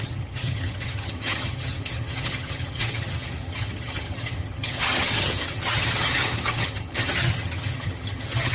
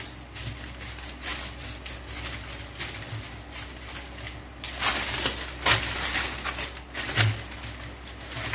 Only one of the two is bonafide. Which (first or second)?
second